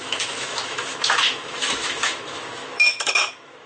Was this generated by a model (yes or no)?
yes